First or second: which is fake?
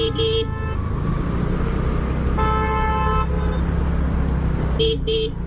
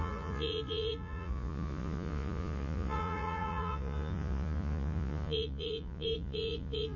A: second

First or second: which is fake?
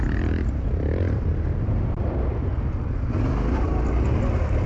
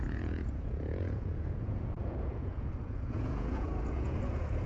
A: second